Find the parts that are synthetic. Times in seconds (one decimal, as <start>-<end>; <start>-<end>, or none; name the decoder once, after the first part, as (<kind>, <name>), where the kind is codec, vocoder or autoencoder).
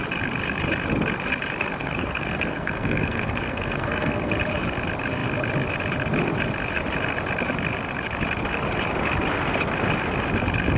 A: 1.8-4.3 (codec, SNAC)